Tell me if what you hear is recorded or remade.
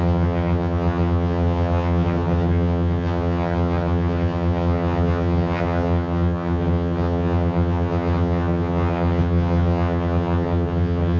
remade